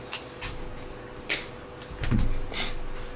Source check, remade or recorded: recorded